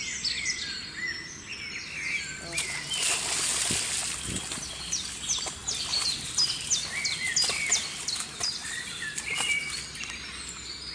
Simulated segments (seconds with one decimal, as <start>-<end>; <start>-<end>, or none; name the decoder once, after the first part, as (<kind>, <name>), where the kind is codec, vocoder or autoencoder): none